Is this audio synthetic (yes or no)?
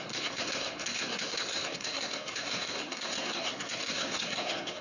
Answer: yes